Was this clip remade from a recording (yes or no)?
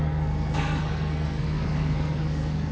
yes